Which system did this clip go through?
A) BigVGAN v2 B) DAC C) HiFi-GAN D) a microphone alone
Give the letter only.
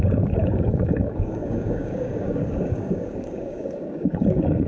B